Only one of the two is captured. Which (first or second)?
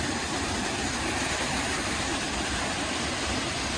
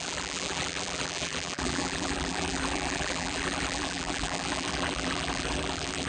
first